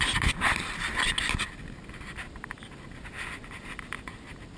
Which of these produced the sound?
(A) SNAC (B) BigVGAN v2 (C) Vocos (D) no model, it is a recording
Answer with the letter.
D